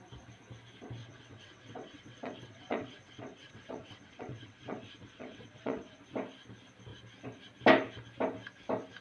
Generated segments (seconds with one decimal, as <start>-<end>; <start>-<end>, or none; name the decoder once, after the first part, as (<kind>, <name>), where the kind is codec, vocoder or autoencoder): 1.0-6.0 (vocoder, WaveNeXt)